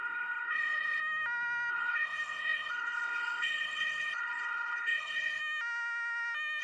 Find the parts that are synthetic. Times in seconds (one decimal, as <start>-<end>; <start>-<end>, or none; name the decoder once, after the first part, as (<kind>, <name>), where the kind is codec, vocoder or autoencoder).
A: 0.0-1.0 (codec, HILCodec); 1.7-5.4